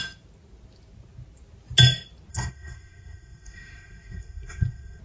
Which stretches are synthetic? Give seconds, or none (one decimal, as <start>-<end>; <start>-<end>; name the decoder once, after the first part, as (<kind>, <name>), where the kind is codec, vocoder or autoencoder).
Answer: 2.3-5.0 (codec, SNAC)